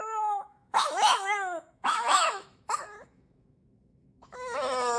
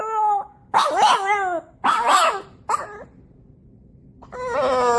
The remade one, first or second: first